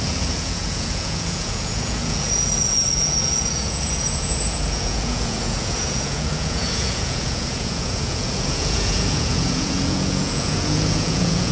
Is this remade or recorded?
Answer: remade